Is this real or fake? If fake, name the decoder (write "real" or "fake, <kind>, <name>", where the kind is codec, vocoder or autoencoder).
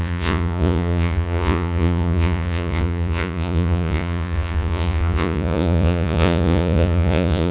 fake, vocoder, Vocos